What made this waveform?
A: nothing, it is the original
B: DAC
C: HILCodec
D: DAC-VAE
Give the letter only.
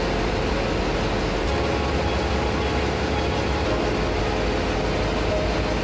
A